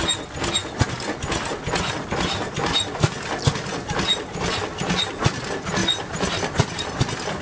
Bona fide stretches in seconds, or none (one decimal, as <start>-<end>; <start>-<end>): 0.0-5.8; 7.0-7.4